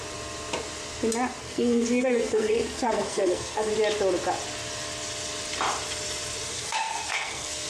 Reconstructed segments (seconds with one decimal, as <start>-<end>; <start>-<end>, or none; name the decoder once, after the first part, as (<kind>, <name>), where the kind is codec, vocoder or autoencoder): 1.4-3.7 (codec, SNAC); 6.5-7.7